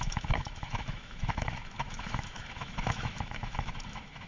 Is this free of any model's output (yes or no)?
no